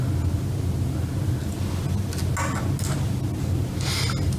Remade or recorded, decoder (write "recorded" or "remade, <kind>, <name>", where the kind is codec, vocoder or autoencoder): recorded